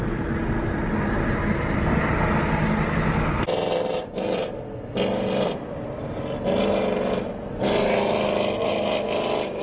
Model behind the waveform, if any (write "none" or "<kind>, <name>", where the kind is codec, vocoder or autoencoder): none